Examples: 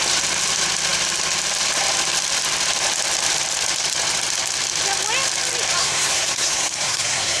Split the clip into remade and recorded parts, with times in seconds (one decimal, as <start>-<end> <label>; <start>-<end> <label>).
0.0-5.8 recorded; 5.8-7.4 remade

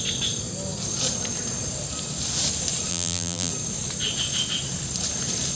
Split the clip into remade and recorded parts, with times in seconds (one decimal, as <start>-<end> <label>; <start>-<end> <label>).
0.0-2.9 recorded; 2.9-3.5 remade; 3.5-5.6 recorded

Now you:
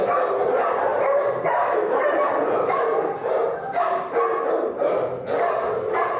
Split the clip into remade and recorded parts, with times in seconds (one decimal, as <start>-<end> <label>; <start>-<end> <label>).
0.0-0.9 recorded; 0.9-3.8 remade; 3.8-6.2 recorded

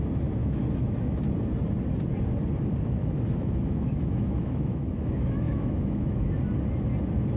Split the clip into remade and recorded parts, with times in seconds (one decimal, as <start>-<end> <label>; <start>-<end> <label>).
0.0-0.4 recorded; 0.4-1.2 remade; 1.2-3.0 recorded; 3.0-6.3 remade; 6.3-7.4 recorded